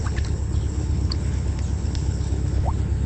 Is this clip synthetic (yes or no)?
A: yes